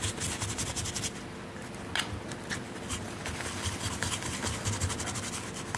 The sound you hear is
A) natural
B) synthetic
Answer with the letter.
A